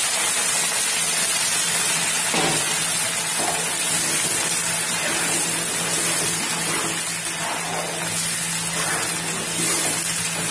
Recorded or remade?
recorded